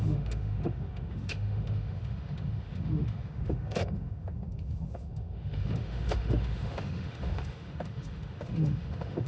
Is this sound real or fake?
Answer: fake